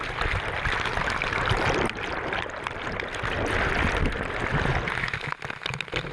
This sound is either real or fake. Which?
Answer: real